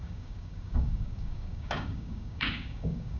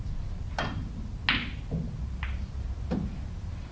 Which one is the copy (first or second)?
first